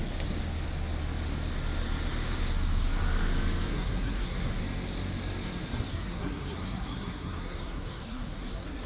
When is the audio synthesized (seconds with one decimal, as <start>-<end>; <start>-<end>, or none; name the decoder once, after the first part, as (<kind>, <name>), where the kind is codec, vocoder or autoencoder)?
3.7-4.6 (codec, SNAC); 5.9-8.9